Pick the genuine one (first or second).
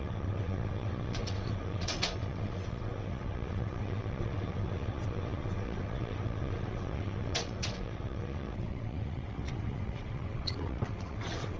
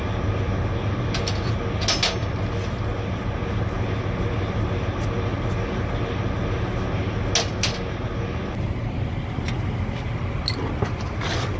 second